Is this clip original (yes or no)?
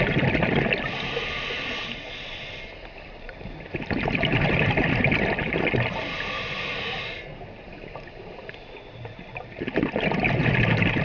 yes